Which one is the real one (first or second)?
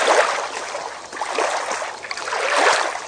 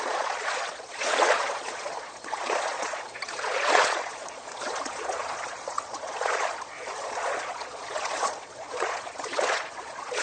first